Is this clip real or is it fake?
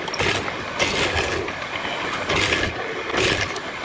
real